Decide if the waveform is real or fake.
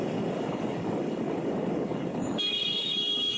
fake